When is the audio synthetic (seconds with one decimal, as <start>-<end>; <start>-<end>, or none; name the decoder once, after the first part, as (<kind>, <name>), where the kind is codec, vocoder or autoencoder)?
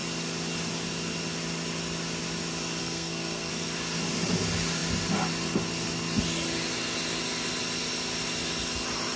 2.8-3.5 (codec, SNAC)